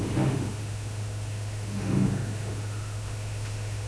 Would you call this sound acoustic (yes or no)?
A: no